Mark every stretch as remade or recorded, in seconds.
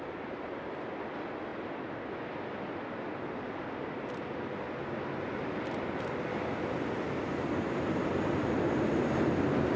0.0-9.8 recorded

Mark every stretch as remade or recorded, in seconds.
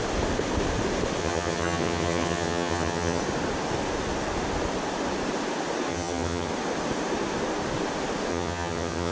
0.0-1.2 recorded; 1.2-3.2 remade; 3.2-5.9 recorded; 5.9-6.5 remade; 6.5-8.3 recorded; 8.3-9.1 remade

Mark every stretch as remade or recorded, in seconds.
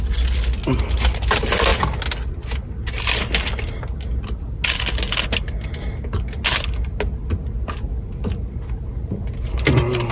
0.0-10.1 recorded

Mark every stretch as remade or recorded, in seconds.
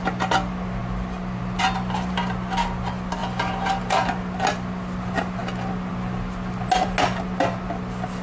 0.0-8.2 recorded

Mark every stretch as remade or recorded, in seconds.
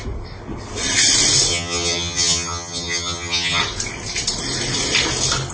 0.0-1.5 recorded; 1.5-3.6 remade; 3.6-5.5 recorded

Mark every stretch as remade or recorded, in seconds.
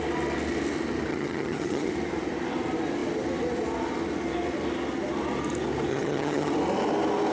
0.0-1.1 recorded; 1.1-1.9 remade; 1.9-5.9 recorded; 5.9-6.5 remade; 6.5-7.3 recorded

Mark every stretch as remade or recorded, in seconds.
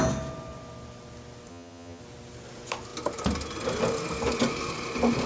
0.0-1.5 recorded; 1.5-2.0 remade; 2.0-5.3 recorded